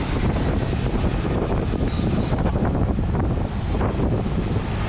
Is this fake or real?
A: fake